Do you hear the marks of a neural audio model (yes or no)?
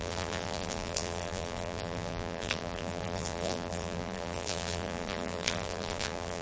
yes